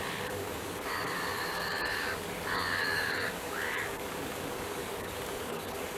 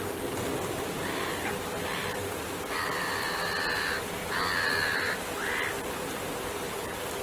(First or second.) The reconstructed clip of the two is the first